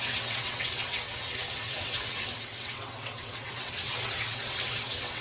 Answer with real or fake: fake